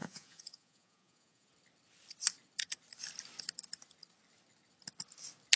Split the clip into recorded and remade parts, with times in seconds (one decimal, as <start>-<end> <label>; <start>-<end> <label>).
0.0-1.5 remade; 1.5-5.6 recorded